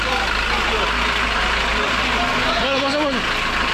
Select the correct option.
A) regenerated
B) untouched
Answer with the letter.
B